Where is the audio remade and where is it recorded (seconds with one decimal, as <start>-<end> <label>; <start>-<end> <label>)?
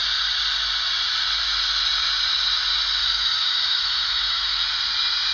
0.0-3.0 recorded; 3.0-4.8 remade; 4.8-5.3 recorded